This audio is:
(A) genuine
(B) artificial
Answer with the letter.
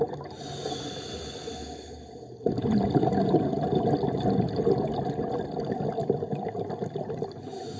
A